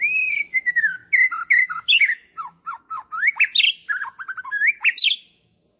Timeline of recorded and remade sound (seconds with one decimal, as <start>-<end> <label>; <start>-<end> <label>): 0.0-1.0 remade; 1.0-1.6 recorded; 1.6-3.5 remade; 3.5-4.4 recorded; 4.4-5.8 remade

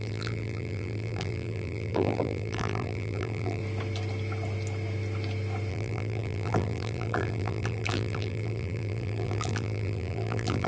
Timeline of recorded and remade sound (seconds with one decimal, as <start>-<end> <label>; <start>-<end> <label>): 0.0-3.6 remade; 3.6-5.7 recorded; 5.7-10.7 remade

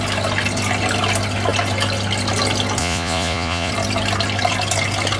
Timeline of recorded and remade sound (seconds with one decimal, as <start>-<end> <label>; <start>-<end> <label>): 0.0-2.8 recorded; 2.8-3.7 remade; 3.7-5.2 recorded

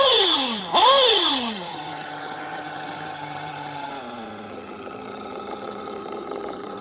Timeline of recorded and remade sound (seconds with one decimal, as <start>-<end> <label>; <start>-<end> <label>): 0.0-0.6 remade; 0.6-1.1 recorded; 1.1-3.9 remade; 3.9-4.5 recorded; 4.5-6.8 remade

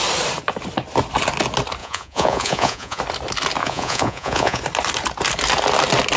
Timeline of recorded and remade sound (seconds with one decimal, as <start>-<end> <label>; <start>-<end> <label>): 0.0-1.8 recorded; 1.8-3.0 remade; 3.0-3.6 recorded; 3.6-4.6 remade; 4.6-6.2 recorded

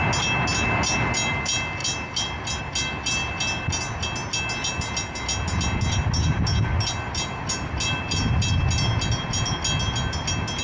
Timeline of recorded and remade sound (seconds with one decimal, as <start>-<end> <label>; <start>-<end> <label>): 0.0-10.6 recorded